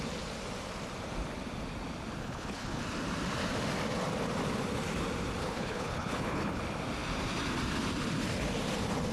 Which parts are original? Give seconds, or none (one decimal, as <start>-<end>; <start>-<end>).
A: 0.0-2.2; 2.8-5.4; 6.6-9.1